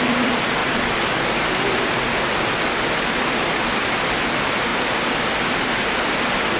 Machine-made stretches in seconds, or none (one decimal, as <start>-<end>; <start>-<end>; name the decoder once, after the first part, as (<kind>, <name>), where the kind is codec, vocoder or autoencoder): 0.0-0.6 (vocoder, BigVGAN v2); 2.9-4.7